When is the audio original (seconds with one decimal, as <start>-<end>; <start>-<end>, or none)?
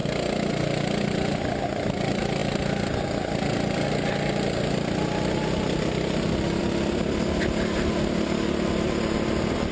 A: 0.0-9.7